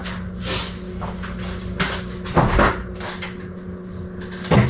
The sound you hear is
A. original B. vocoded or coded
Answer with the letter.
A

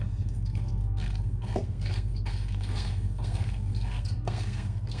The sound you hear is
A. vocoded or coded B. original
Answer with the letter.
A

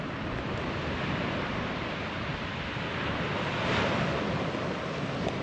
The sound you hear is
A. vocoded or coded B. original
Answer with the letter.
B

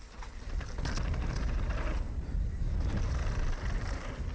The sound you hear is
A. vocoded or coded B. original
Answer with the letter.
B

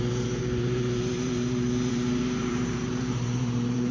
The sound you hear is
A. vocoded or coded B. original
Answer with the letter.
A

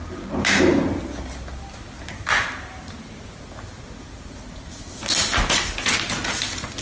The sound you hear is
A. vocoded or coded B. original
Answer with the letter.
B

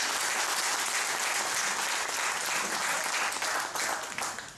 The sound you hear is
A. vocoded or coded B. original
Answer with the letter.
B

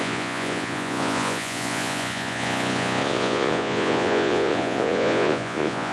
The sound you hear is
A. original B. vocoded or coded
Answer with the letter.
B